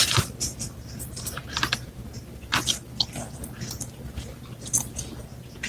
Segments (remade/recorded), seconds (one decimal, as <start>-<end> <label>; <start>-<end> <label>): 0.0-5.7 recorded